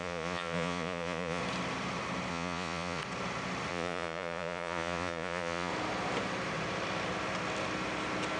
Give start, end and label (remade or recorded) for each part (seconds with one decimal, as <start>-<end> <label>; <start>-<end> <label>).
0.0-1.4 remade; 1.4-2.3 recorded; 2.3-3.0 remade; 3.0-3.7 recorded; 3.7-5.7 remade; 5.7-8.4 recorded